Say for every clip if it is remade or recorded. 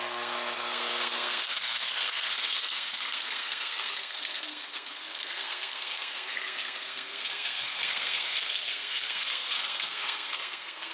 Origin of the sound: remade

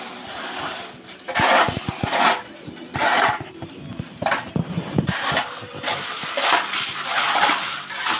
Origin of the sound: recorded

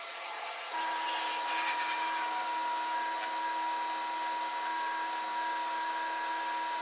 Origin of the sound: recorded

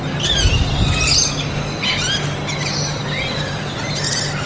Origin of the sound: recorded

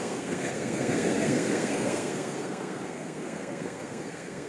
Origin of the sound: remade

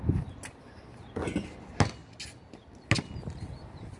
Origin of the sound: recorded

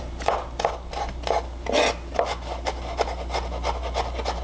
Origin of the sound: recorded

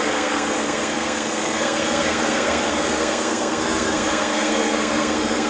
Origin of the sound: remade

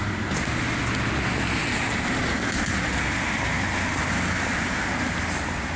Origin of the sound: recorded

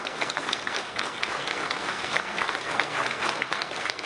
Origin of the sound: remade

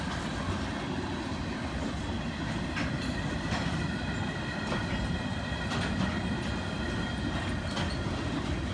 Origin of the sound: recorded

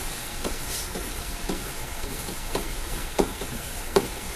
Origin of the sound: remade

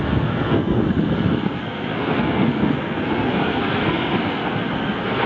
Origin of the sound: remade